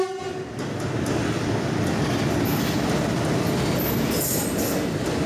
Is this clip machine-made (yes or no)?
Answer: no